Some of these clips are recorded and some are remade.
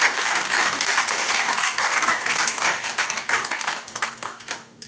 remade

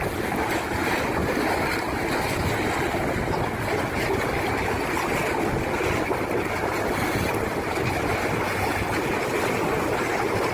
recorded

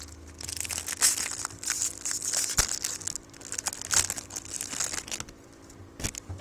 recorded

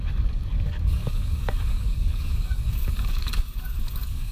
remade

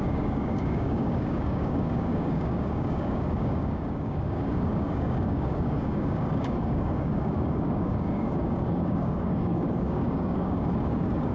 remade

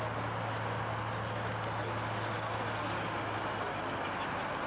recorded